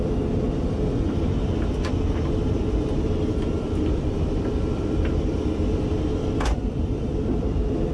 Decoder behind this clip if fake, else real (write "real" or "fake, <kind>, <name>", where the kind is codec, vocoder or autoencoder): fake, vocoder, BigVGAN v2